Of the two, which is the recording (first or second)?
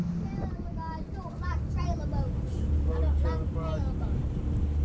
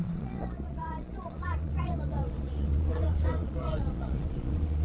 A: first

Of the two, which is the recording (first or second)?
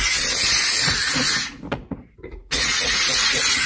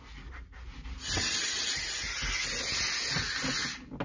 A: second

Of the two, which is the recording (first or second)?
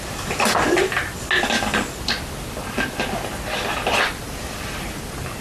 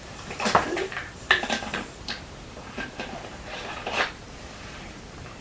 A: first